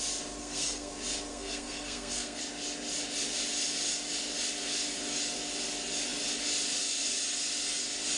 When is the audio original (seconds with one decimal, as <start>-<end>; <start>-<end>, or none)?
0.0-0.4; 0.9-1.3; 2.4-8.2